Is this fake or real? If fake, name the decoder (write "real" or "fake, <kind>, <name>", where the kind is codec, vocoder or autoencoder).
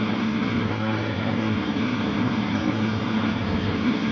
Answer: fake, codec, SNAC